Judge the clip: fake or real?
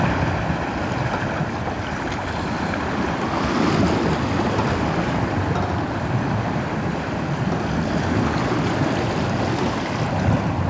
real